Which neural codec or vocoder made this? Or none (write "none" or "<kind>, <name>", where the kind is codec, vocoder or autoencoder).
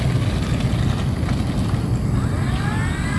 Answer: none